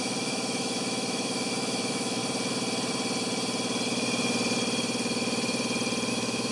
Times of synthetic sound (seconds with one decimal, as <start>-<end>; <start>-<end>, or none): 0.0-2.2; 6.1-6.5